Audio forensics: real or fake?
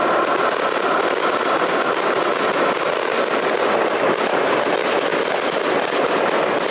real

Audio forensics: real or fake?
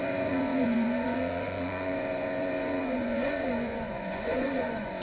fake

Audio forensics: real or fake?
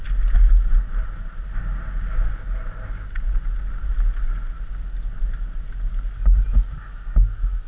real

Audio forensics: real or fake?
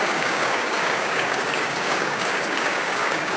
fake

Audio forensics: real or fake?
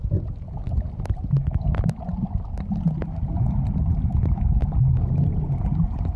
real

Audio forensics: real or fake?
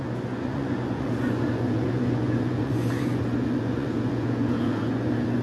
fake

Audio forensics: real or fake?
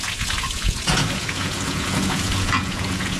fake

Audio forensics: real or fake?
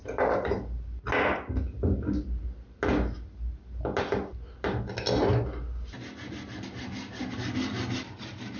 real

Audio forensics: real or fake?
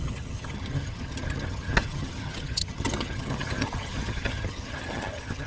fake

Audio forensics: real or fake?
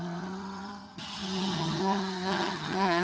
fake